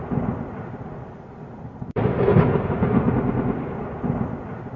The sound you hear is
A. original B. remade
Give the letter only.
A